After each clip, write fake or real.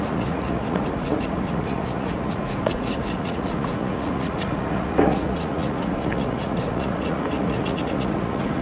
fake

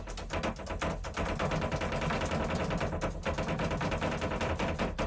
real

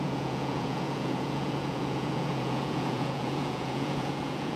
fake